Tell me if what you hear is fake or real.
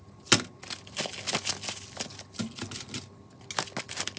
real